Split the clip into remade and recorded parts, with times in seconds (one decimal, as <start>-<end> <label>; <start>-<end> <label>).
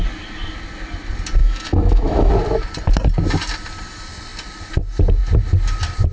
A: 0.0-1.4 recorded; 1.4-2.3 remade; 2.3-6.1 recorded